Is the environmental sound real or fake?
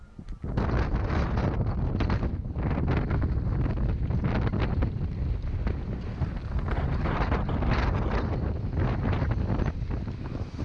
real